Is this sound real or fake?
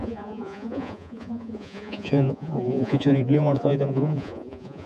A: fake